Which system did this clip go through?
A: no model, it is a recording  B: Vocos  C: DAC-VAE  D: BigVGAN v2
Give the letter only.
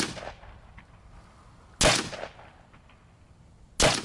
A